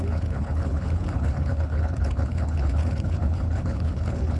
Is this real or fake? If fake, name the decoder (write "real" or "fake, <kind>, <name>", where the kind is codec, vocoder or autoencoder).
fake, codec, HILCodec